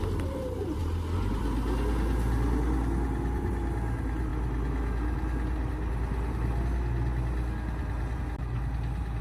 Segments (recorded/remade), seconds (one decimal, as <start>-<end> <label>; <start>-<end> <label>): 0.0-9.2 recorded